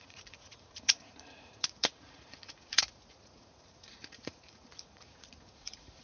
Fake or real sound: fake